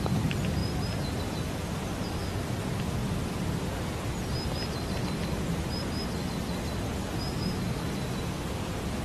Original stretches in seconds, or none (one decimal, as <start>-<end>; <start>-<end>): 0.0-9.0